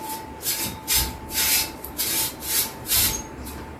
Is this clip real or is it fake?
fake